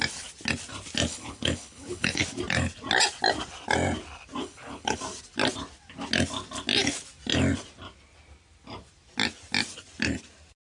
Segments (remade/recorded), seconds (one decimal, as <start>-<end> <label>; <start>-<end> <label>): 0.0-1.1 recorded; 1.1-2.2 remade; 2.2-4.4 recorded; 4.4-5.0 remade; 5.0-10.7 recorded